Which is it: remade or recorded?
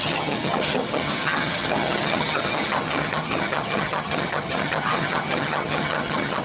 remade